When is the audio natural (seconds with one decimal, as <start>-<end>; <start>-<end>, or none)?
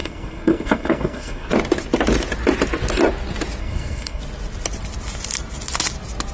1.5-3.6; 4.2-6.3